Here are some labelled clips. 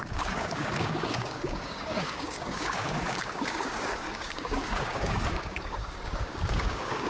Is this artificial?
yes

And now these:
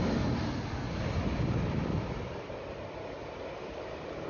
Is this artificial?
no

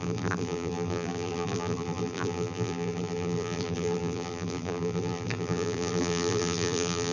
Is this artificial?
yes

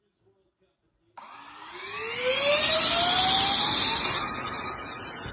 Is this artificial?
no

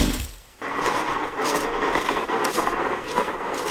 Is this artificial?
yes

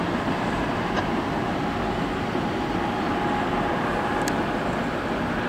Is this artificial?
no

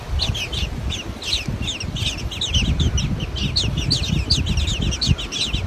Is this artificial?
no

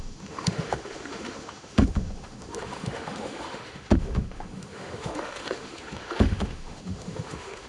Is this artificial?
yes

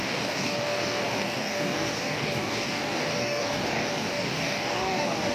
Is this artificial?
yes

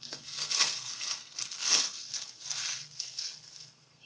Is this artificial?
yes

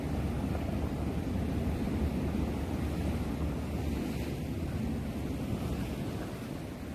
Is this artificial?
no